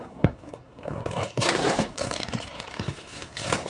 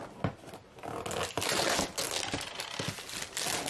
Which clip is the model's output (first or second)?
first